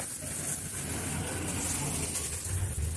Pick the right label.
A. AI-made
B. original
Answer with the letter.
B